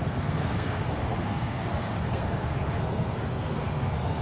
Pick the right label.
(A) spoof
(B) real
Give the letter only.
A